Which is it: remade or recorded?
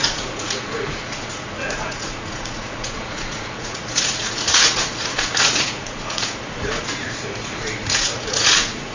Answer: remade